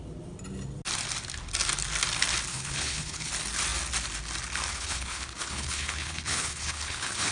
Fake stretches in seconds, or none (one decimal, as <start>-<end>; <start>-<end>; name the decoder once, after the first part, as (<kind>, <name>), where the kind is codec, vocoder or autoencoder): 2.5-3.3 (codec, HILCodec); 4.7-7.3